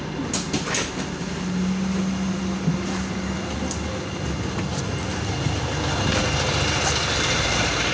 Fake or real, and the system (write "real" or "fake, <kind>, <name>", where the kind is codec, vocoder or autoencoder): real